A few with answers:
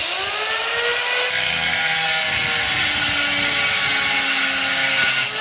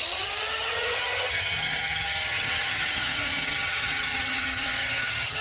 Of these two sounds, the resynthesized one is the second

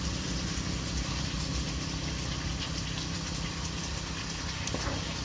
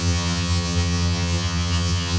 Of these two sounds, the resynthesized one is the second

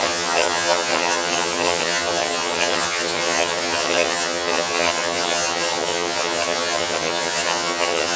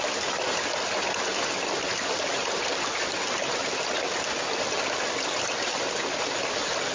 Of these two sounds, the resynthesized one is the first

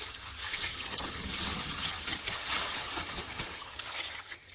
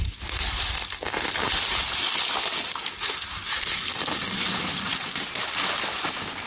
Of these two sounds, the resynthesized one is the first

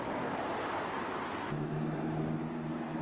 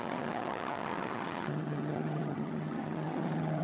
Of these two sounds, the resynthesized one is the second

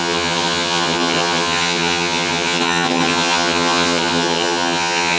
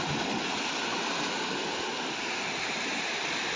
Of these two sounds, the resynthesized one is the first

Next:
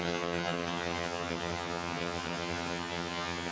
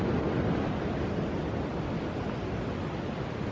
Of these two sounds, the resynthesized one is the first